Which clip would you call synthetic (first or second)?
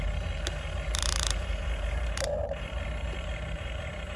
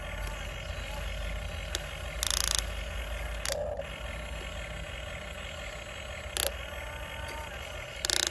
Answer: first